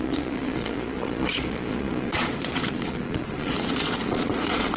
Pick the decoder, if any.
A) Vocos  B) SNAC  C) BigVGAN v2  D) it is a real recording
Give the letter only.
A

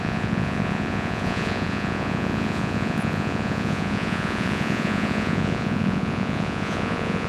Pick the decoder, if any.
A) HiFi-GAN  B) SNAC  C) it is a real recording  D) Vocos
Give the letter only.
D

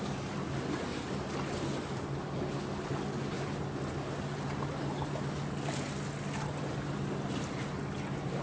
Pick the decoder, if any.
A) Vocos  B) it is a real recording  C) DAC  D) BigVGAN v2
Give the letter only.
B